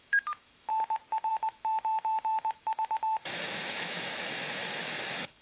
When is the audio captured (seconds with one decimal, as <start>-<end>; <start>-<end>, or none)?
0.7-1.3